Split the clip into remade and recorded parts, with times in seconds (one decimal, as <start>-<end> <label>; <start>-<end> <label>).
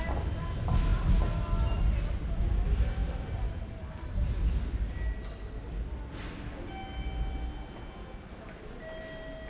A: 0.0-9.5 recorded